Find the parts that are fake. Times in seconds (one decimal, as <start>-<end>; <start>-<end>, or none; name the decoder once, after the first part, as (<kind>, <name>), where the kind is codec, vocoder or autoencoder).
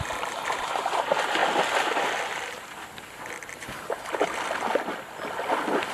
none